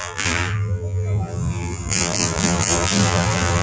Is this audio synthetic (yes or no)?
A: yes